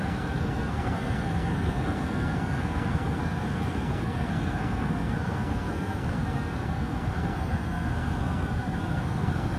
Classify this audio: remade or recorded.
remade